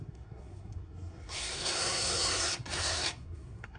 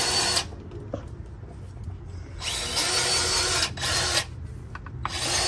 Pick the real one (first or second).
second